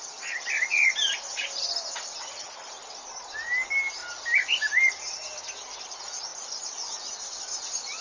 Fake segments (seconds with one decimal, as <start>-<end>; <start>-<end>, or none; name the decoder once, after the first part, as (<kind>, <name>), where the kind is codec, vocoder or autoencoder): 2.2-2.7 (vocoder, HiFi-GAN)